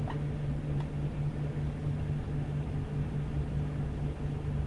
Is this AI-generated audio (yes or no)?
no